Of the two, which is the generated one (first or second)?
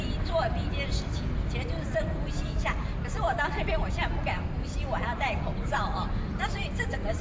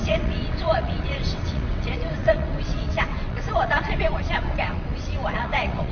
second